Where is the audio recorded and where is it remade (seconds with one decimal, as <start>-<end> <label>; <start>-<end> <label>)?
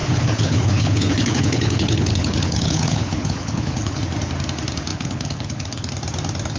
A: 0.0-4.0 remade; 4.0-4.9 recorded; 4.9-5.9 remade; 5.9-6.6 recorded